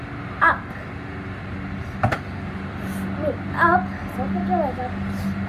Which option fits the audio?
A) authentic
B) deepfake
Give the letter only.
A